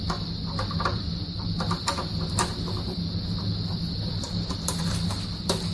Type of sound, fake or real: real